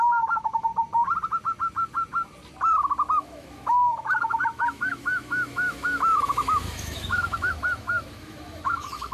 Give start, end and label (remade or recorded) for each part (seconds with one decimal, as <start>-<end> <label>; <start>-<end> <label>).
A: 0.0-0.7 remade; 0.7-3.2 recorded; 3.2-9.1 remade